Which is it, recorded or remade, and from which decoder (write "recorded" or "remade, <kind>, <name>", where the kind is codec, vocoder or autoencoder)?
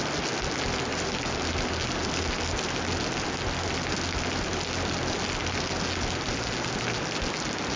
recorded